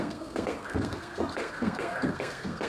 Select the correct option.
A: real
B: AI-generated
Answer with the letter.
B